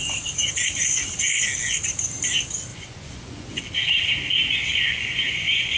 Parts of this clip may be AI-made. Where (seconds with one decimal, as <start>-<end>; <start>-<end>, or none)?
2.7-3.6; 4.7-5.8

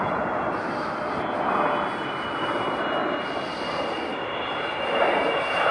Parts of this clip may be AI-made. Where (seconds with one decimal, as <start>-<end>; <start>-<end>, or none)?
none